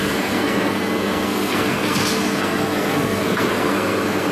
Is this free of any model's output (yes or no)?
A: no